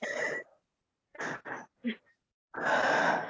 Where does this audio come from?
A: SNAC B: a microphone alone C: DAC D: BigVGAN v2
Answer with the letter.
D